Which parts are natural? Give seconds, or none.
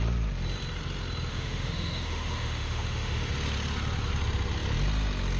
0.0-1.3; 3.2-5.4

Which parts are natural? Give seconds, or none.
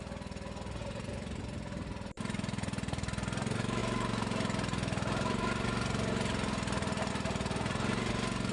0.0-8.5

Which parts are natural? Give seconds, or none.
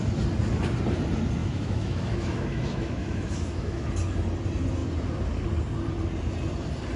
0.0-1.4; 3.9-7.0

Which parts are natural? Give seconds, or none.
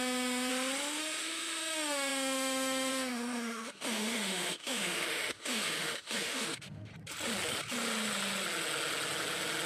0.5-1.0; 6.9-9.7